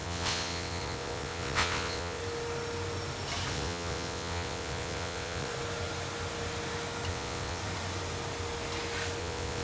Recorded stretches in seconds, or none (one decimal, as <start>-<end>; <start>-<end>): 2.2-3.5; 5.5-7.1; 7.6-9.2